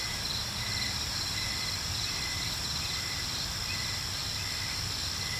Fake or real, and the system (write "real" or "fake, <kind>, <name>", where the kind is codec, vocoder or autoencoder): real